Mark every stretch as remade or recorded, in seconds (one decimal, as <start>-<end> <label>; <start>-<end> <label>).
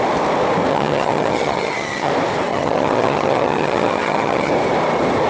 0.0-0.7 recorded; 0.7-2.1 remade; 2.1-2.5 recorded; 2.5-4.5 remade; 4.5-5.3 recorded